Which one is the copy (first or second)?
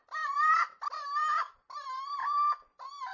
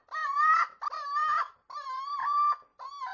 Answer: first